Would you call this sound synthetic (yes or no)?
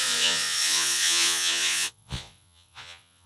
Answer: yes